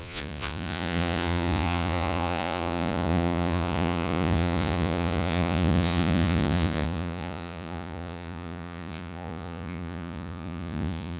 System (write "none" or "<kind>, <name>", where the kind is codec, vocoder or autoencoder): vocoder, Vocos